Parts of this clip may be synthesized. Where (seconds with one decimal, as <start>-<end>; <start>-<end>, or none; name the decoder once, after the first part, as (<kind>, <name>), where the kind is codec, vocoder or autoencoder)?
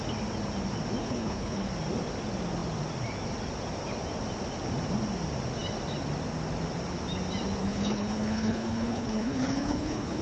1.0-1.7 (codec, HILCodec); 7.6-10.2